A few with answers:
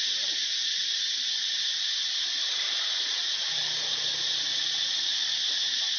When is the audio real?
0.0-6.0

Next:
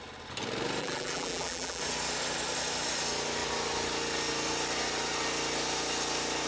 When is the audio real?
0.0-0.8; 1.8-6.5

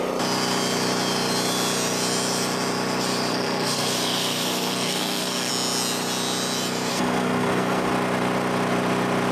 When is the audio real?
0.0-3.3; 5.5-6.9; 7.9-9.3

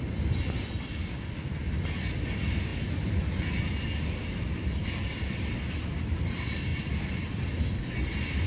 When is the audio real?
0.0-8.5